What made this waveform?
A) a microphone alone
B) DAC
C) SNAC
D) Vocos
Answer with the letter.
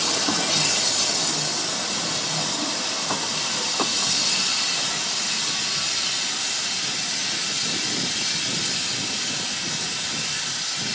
A